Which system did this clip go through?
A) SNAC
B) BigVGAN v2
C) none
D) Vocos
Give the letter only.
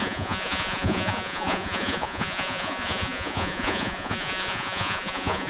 D